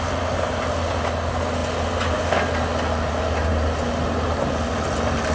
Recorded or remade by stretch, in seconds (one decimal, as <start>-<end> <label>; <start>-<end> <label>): 0.0-5.3 recorded